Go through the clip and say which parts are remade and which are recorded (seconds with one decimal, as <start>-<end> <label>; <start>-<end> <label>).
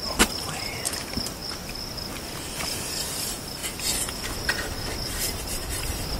0.0-1.4 remade; 1.4-3.1 recorded; 3.1-3.6 remade; 3.6-5.0 recorded; 5.0-6.2 remade